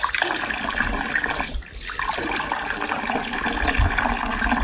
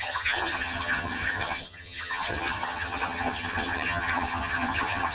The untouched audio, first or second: first